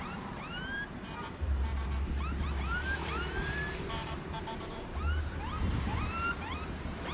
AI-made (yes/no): yes